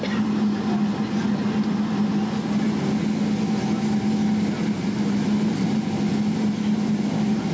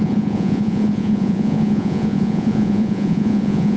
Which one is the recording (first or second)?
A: first